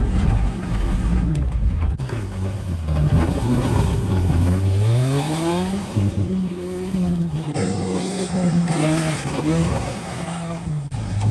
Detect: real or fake fake